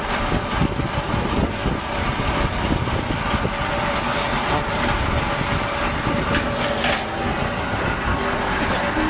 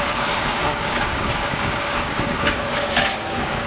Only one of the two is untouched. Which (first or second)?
first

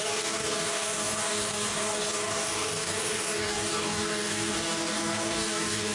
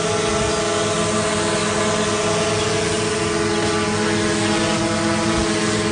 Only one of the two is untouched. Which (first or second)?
second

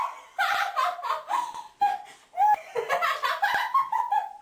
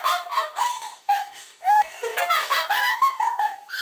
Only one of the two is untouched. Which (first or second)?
first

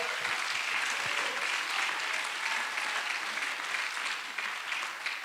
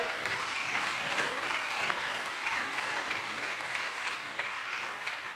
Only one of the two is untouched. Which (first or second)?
first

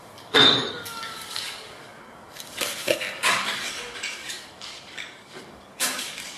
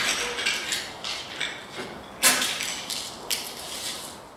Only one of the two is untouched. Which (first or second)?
second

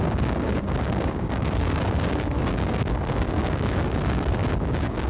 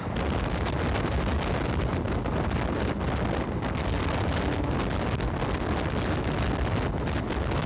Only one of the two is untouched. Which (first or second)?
second